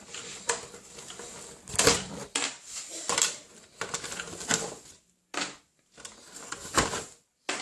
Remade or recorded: recorded